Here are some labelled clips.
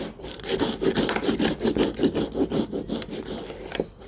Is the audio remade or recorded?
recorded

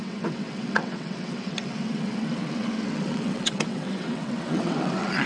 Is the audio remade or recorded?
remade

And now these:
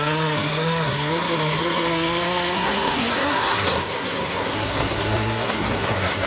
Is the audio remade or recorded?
remade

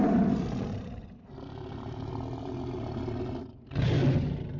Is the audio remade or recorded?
recorded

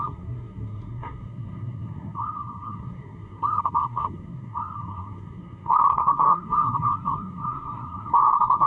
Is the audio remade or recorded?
remade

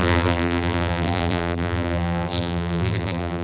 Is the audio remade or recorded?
remade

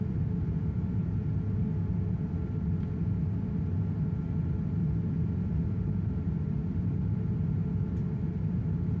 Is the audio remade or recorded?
recorded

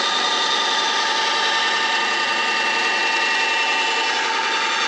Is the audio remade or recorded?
recorded